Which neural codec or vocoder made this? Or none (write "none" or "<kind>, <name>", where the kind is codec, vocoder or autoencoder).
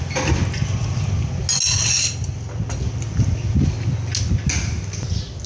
none